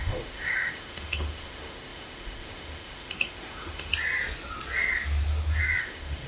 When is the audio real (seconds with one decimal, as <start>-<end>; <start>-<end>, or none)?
3.9-5.8